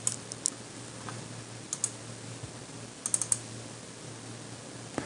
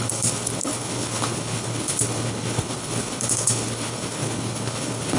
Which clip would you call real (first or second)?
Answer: first